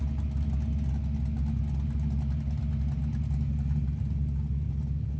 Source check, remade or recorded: recorded